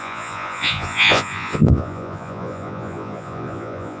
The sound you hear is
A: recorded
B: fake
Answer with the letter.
B